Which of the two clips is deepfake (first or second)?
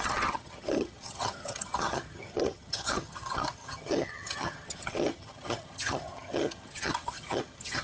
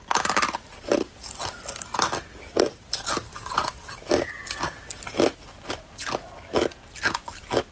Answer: first